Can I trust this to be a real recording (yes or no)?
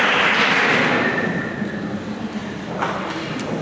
yes